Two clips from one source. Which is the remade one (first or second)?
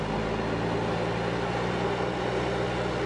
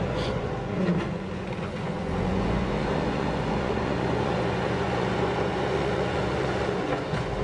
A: second